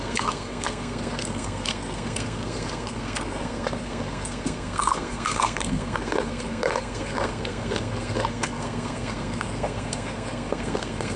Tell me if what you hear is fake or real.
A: fake